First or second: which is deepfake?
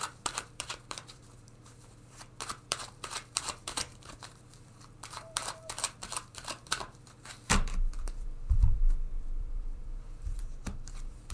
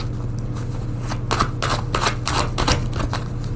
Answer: first